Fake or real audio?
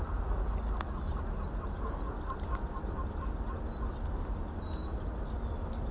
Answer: real